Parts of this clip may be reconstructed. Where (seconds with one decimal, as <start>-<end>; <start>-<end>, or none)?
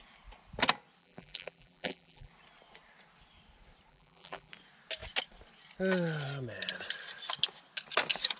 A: 1.0-2.3; 3.9-4.5